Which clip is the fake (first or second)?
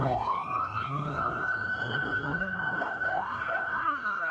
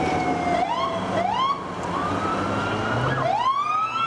first